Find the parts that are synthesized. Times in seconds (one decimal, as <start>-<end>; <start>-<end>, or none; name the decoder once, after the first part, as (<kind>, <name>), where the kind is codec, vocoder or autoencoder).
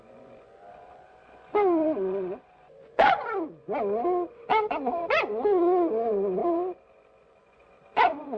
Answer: 0.0-8.4 (vocoder, Vocos)